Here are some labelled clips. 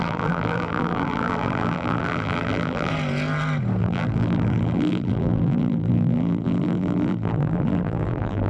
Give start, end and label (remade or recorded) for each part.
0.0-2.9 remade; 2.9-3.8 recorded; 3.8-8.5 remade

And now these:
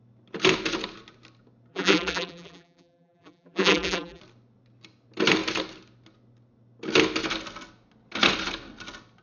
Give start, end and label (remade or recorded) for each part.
0.0-1.7 recorded; 1.7-4.2 remade; 4.2-9.2 recorded

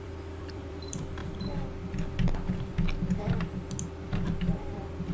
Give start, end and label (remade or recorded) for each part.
0.0-1.2 remade; 1.2-4.3 recorded; 4.3-5.1 remade

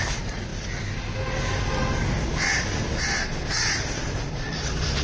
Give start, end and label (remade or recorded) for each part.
0.0-5.0 recorded